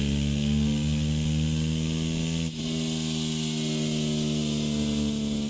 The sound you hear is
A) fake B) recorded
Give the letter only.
B